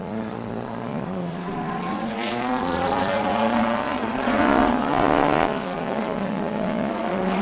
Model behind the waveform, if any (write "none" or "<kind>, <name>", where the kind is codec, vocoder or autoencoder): vocoder, Vocos